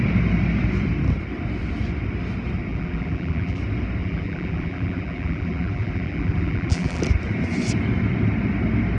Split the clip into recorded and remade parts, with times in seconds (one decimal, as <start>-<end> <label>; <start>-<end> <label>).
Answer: 0.0-2.7 recorded; 2.7-3.6 remade; 3.6-4.0 recorded; 4.0-7.0 remade; 7.0-9.0 recorded